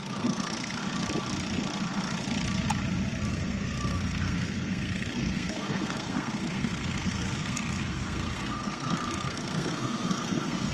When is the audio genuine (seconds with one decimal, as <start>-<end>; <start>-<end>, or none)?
0.8-3.3

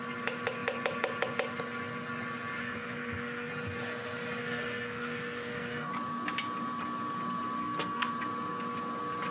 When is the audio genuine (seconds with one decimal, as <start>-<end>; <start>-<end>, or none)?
0.0-2.6; 3.5-4.4; 5.9-7.6; 8.1-9.3

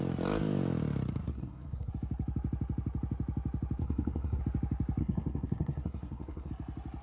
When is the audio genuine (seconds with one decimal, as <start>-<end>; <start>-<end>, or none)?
0.0-1.3; 1.9-3.8; 4.4-5.0; 6.5-7.0

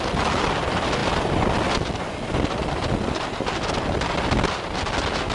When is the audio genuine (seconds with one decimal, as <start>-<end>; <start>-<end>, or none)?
0.0-5.3

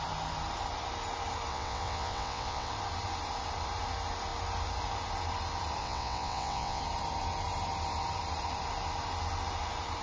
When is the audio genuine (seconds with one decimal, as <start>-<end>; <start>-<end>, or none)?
0.0-1.5; 2.7-5.8; 6.8-10.0

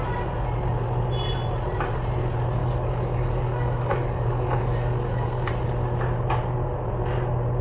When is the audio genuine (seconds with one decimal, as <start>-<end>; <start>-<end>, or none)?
0.0-2.6; 5.5-7.6

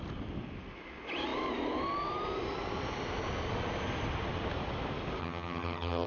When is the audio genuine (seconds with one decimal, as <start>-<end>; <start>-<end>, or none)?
0.0-5.2

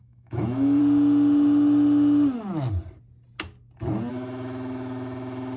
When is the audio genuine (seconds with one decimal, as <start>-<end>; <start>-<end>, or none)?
0.8-4.1